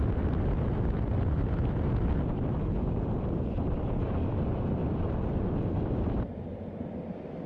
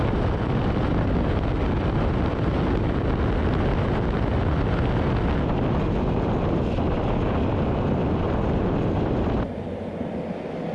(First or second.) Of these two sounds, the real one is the second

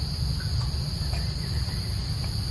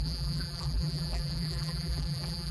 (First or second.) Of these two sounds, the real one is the first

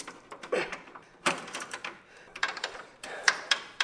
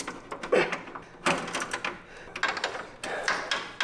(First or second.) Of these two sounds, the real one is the second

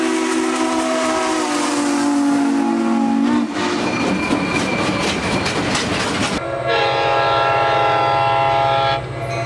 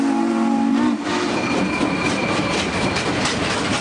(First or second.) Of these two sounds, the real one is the first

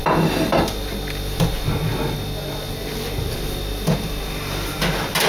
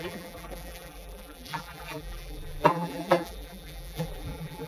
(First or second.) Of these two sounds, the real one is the first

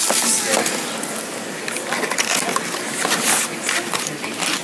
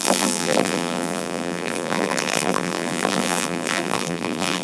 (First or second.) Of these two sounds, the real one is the first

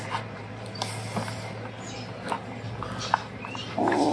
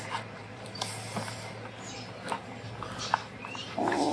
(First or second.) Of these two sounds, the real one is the first